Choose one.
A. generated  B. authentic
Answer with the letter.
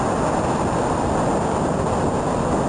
B